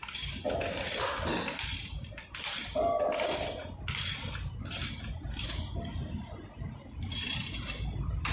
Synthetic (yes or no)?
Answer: no